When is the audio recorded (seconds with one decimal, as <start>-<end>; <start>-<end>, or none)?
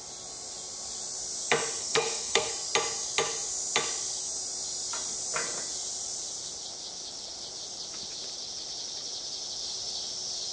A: 0.0-1.8; 2.5-10.5